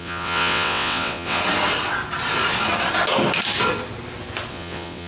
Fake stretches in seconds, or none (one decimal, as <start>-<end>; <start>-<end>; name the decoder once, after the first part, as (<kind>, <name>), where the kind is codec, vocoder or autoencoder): 0.0-1.4 (vocoder, WaveNeXt); 4.5-5.1